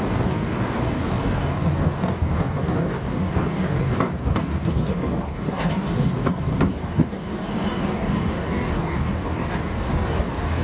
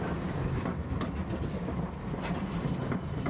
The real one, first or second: second